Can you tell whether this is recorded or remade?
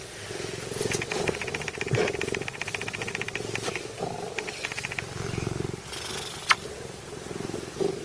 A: recorded